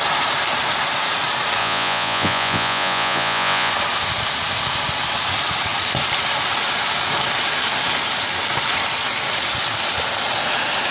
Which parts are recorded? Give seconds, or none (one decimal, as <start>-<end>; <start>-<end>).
0.0-1.6; 3.7-10.9

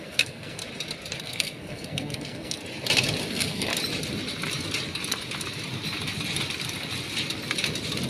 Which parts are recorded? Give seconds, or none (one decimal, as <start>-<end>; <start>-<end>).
0.6-1.2; 2.6-3.3; 3.7-8.1

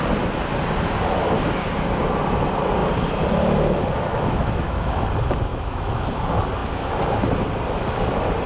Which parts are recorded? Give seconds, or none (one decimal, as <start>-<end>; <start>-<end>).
0.0-4.1; 5.0-5.5; 6.1-8.5